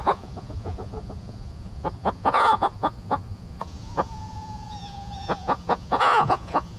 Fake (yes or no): yes